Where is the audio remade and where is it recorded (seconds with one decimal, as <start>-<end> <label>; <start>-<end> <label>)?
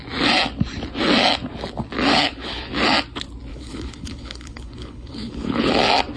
0.0-2.1 recorded; 2.1-2.7 remade; 2.7-3.5 recorded; 3.5-5.7 remade; 5.7-6.2 recorded